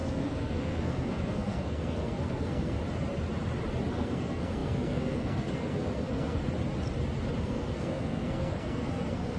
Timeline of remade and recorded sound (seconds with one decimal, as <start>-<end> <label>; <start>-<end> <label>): 0.0-2.8 remade; 2.8-3.9 recorded; 3.9-6.4 remade; 6.4-7.4 recorded; 7.4-9.4 remade